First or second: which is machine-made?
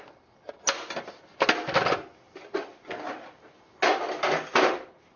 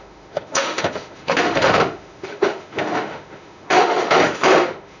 second